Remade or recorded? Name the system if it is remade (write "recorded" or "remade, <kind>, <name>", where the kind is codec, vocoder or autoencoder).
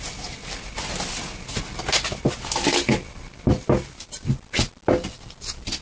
recorded